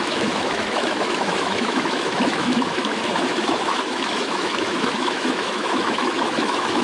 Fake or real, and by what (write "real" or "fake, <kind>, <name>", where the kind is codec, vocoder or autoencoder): fake, autoencoder, DAC-VAE